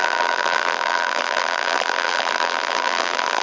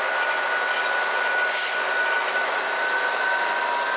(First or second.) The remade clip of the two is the first